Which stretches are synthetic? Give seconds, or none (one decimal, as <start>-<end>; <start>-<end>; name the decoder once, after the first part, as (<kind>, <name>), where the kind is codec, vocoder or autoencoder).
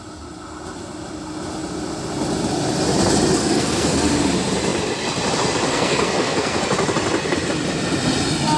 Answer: 3.4-4.1 (codec, SNAC); 5.7-6.6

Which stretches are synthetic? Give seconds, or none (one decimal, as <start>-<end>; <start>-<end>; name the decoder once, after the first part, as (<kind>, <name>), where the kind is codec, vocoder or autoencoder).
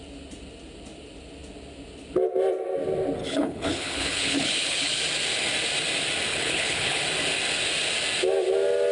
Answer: 3.2-5.0 (codec, HILCodec); 6.3-7.0